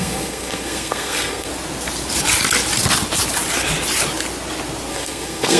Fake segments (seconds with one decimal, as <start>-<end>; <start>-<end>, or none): 0.0-1.5; 4.9-5.6